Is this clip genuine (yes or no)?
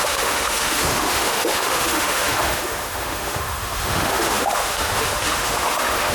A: no